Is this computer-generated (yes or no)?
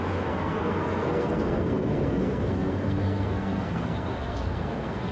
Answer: yes